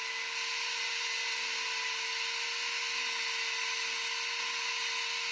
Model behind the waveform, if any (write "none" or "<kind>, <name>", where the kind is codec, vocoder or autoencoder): none